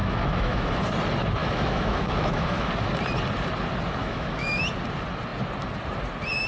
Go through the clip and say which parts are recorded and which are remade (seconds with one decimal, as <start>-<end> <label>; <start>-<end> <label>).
0.0-0.8 remade; 0.8-1.4 recorded; 1.4-2.7 remade; 2.7-4.0 recorded; 4.0-4.6 remade; 4.6-6.5 recorded